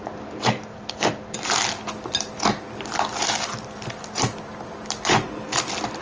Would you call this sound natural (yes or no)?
yes